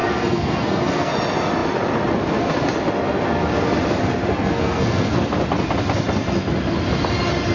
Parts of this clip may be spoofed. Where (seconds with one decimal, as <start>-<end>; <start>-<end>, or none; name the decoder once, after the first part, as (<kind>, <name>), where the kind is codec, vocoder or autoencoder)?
0.0-1.1 (codec, SNAC); 4.3-5.1

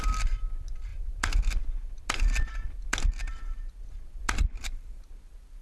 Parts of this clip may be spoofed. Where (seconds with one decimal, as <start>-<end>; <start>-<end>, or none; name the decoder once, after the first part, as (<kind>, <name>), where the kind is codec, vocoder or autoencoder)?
4.4-5.1 (vocoder, BigVGAN v2)

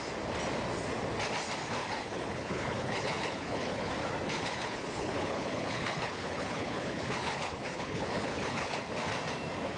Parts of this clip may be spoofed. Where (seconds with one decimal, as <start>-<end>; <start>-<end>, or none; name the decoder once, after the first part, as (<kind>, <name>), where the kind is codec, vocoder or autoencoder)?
1.8-3.9 (codec, HILCodec); 4.3-8.8